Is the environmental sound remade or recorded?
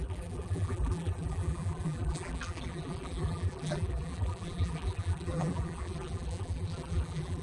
remade